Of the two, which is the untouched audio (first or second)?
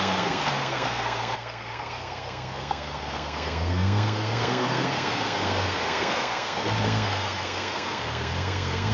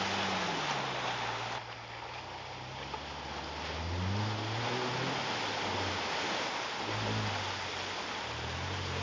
second